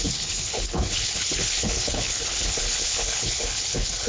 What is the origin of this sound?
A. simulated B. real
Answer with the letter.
A